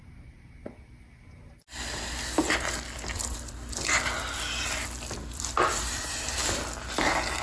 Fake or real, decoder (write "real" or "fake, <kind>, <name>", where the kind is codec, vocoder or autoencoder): real